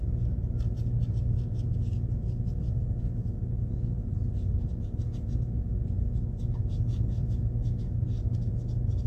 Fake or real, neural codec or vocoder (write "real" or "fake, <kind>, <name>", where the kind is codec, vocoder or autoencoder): real